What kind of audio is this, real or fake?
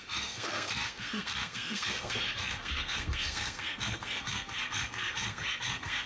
fake